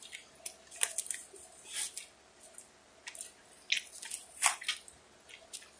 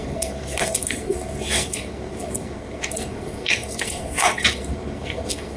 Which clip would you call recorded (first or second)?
first